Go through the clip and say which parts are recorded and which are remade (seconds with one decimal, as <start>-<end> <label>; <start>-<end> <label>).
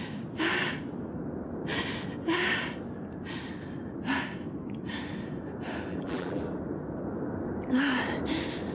0.0-5.9 recorded; 5.9-6.4 remade; 6.4-8.7 recorded